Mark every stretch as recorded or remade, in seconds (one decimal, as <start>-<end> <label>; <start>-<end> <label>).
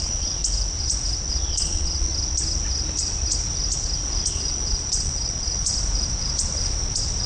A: 0.0-0.4 remade; 0.4-1.3 recorded; 1.3-2.1 remade; 2.1-4.3 recorded; 4.3-5.6 remade; 5.6-7.3 recorded